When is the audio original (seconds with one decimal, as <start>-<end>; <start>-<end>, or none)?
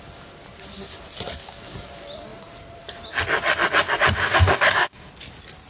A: 0.0-4.2; 5.1-5.7